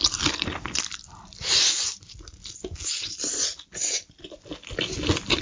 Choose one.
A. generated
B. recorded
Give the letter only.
B